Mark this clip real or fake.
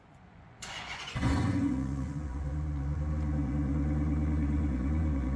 fake